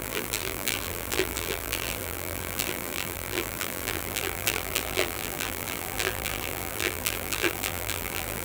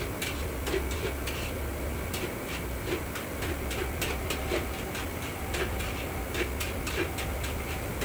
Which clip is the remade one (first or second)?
first